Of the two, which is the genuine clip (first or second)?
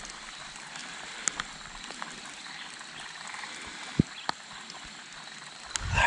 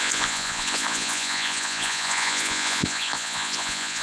first